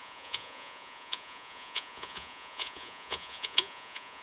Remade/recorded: remade